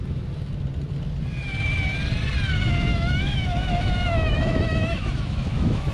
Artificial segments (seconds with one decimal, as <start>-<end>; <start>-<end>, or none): 2.9-5.9